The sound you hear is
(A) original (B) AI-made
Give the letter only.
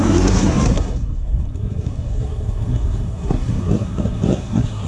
B